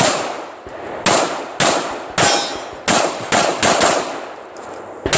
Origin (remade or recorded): recorded